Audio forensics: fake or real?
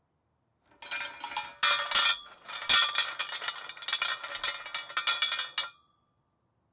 real